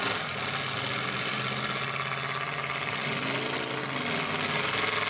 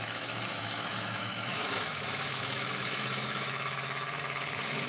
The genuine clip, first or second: first